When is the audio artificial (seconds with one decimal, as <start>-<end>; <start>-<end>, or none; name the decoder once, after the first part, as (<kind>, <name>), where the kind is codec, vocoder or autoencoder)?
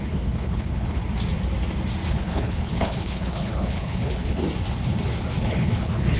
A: 0.0-1.0 (codec, HILCodec); 2.1-4.4; 5.4-6.2